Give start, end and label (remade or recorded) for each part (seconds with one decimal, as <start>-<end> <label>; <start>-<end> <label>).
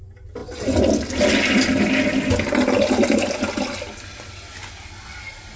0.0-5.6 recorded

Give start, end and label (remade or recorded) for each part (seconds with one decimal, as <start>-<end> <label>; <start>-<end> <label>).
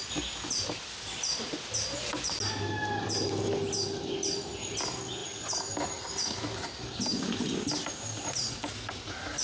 0.0-9.4 recorded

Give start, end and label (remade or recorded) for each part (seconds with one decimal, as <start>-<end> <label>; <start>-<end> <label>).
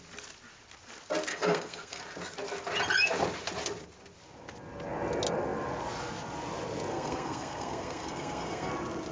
0.0-1.3 recorded; 1.3-2.0 remade; 2.0-6.9 recorded; 6.9-8.7 remade; 8.7-9.1 recorded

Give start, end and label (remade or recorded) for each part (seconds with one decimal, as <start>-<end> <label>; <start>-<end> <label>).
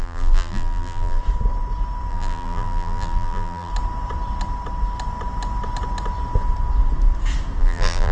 0.0-1.2 remade; 1.2-2.1 recorded; 2.1-3.7 remade; 3.7-7.6 recorded; 7.6-8.1 remade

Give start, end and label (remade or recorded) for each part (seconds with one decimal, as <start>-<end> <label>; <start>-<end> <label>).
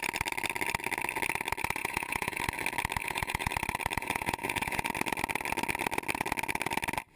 0.0-1.8 recorded; 1.8-2.4 remade; 2.4-3.0 recorded; 3.0-3.5 remade; 3.5-4.0 recorded; 4.0-4.9 remade; 4.9-7.2 recorded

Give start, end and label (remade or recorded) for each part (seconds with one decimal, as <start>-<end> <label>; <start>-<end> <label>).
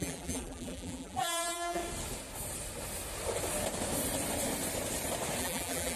0.0-1.8 remade; 1.8-5.4 recorded; 5.4-6.0 remade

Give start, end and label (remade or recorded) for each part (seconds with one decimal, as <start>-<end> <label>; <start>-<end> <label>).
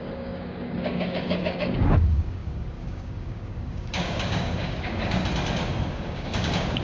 0.0-5.2 remade; 5.2-5.9 recorded; 5.9-6.8 remade